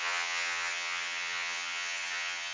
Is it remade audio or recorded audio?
remade